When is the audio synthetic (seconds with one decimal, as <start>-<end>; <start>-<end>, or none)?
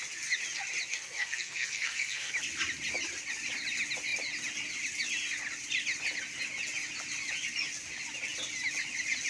0.9-2.3